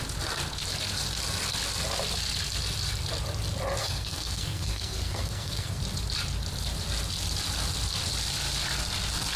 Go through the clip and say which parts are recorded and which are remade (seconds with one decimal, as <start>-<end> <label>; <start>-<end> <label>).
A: 0.0-3.8 recorded; 3.8-5.8 remade; 5.8-9.4 recorded